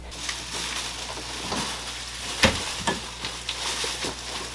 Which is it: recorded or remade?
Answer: recorded